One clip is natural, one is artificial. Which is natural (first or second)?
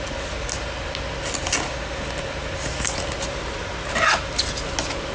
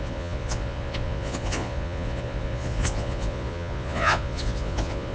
first